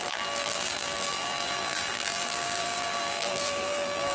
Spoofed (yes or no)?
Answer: yes